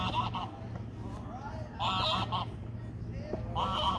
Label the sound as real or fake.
real